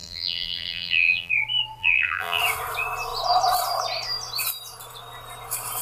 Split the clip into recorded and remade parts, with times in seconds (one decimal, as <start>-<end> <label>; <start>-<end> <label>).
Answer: 0.0-1.3 remade; 1.3-1.8 recorded; 1.8-2.4 remade; 2.4-5.8 recorded